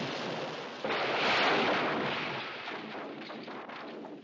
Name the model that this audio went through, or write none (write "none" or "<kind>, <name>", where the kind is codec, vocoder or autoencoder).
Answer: none